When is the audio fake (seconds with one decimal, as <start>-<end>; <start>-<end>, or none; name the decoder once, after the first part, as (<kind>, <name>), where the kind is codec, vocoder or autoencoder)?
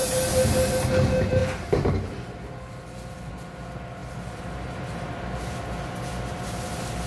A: none